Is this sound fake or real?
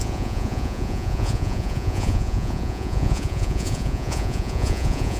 fake